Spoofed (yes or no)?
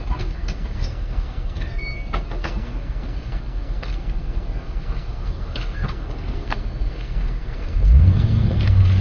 yes